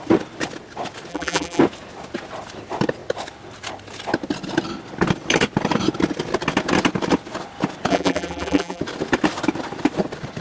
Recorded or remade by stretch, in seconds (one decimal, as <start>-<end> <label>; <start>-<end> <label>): 0.0-1.1 recorded; 1.1-1.6 remade; 1.6-7.9 recorded; 7.9-8.8 remade; 8.8-10.4 recorded